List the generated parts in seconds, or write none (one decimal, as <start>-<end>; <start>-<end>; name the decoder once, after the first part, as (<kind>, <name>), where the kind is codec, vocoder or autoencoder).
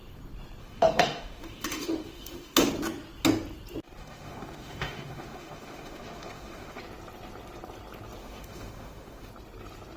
0.6-2.7 (autoencoder, DAC-VAE); 4.0-6.8; 8.2-9.3